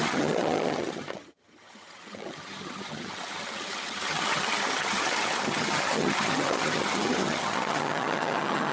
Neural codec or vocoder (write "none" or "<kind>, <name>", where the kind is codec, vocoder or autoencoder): vocoder, HiFi-GAN